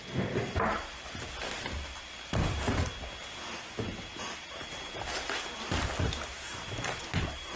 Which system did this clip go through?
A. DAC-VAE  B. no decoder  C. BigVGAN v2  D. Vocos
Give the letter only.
B